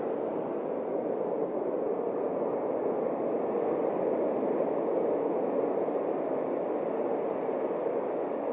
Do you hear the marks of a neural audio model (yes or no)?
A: no